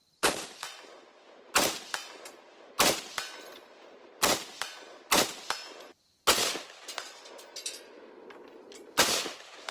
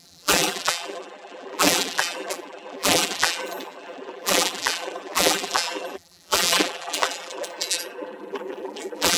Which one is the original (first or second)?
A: first